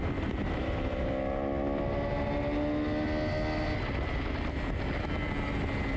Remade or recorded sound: recorded